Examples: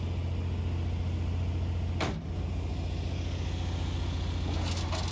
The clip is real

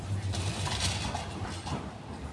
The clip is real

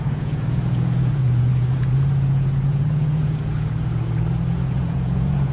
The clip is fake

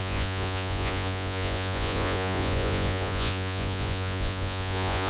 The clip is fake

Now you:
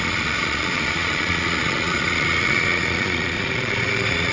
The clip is fake